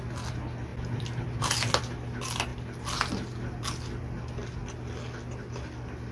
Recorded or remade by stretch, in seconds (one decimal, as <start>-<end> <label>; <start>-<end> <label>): 0.0-6.1 recorded